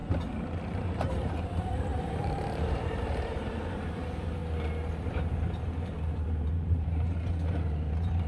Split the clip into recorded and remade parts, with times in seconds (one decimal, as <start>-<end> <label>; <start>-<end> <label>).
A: 0.0-1.0 recorded; 1.0-4.4 remade; 4.4-5.1 recorded; 5.1-8.3 remade